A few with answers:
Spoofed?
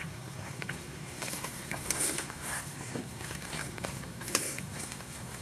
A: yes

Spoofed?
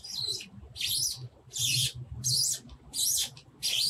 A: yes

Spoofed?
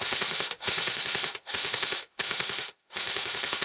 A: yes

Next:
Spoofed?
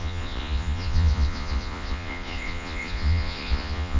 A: yes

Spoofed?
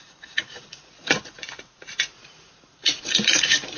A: yes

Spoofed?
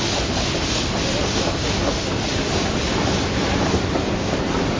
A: no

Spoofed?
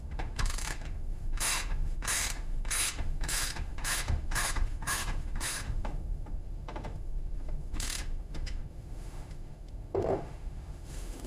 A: yes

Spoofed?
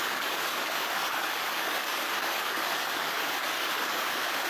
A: yes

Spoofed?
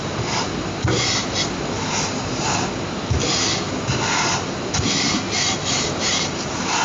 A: no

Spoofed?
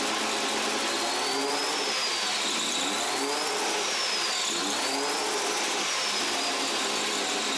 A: no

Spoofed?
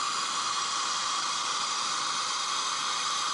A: yes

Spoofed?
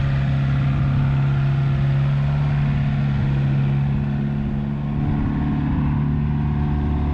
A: no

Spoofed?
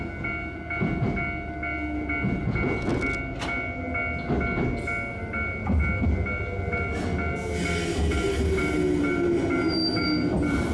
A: no